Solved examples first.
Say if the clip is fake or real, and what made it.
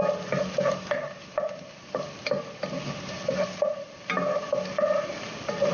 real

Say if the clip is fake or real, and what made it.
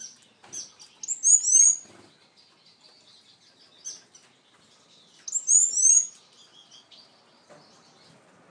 real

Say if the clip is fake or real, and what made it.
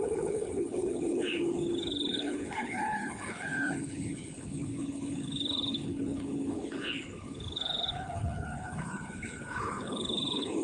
fake, codec, HILCodec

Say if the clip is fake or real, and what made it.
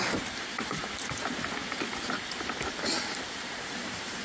real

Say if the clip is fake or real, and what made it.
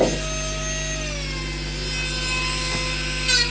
real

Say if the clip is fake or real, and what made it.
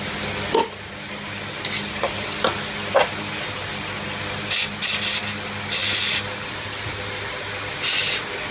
real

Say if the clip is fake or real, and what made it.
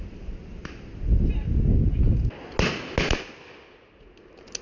real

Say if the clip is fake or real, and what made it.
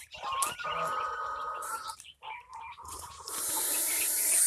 fake, vocoder, BigVGAN v2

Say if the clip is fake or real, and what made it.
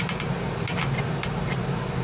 fake, vocoder, BigVGAN v2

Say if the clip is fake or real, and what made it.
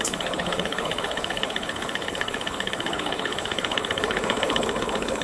fake, codec, HILCodec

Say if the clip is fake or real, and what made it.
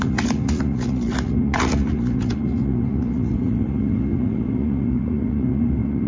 fake, vocoder, Vocos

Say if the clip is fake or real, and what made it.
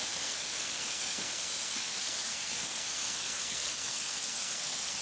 fake, codec, SNAC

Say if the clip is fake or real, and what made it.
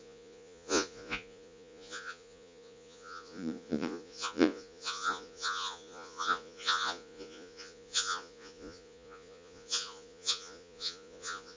fake, vocoder, Vocos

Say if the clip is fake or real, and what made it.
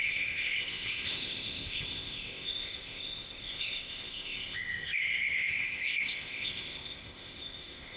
fake, codec, ZipCodec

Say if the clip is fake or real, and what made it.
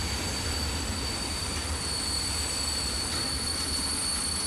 real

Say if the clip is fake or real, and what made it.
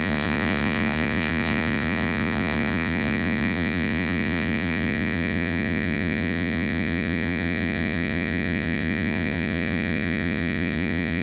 fake, vocoder, Vocos